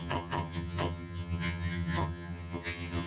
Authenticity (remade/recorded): remade